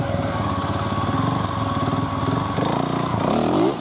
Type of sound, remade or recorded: recorded